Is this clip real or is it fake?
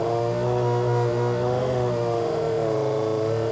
fake